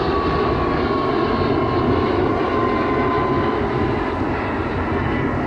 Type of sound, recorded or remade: recorded